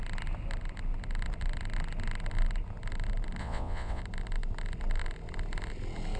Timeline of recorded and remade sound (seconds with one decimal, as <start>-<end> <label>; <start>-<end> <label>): 0.0-3.4 recorded; 3.4-4.0 remade; 4.0-6.2 recorded

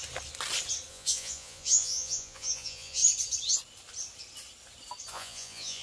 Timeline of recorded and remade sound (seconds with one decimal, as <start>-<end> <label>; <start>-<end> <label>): 0.0-0.9 recorded; 0.9-3.0 remade; 3.0-5.1 recorded; 5.1-5.8 remade

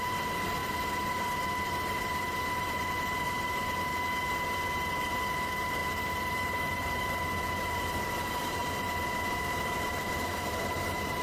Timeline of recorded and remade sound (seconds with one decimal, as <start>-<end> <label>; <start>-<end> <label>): 0.0-3.9 remade; 3.9-5.0 recorded; 5.0-8.6 remade; 8.6-9.4 recorded; 9.4-11.2 remade

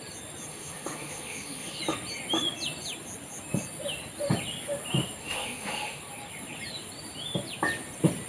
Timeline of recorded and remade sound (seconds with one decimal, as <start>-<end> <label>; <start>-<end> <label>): 0.0-0.5 recorded; 0.5-1.8 remade; 1.8-5.2 recorded; 5.2-6.0 remade; 6.0-8.3 recorded

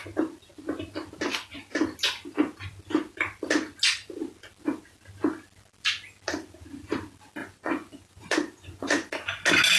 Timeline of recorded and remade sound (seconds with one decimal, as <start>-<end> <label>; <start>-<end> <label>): 0.0-7.4 recorded; 7.4-9.1 remade; 9.1-9.8 recorded

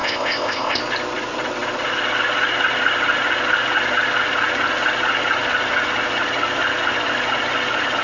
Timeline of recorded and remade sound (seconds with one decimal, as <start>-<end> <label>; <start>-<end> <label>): 0.0-0.8 remade; 0.8-8.0 recorded

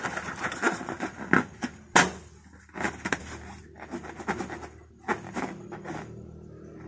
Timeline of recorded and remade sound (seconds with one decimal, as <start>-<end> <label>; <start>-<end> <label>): 0.0-6.9 recorded